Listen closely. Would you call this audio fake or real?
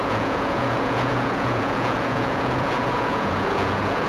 fake